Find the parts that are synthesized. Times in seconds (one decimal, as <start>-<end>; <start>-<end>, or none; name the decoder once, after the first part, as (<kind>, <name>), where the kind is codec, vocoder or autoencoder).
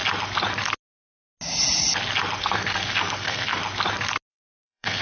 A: 2.4-3.6 (codec, SNAC); 4.3-5.0